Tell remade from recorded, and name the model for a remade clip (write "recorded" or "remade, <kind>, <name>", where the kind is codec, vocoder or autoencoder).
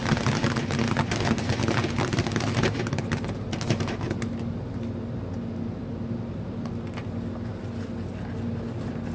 recorded